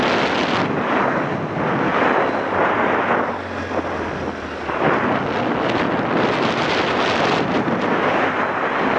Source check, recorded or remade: recorded